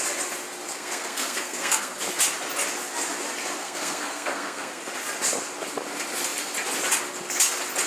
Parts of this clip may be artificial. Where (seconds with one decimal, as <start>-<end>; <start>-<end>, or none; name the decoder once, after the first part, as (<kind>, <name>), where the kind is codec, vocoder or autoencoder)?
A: 0.7-2.0 (codec, SNAC); 3.6-4.8